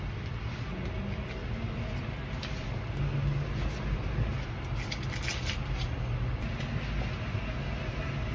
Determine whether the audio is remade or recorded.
recorded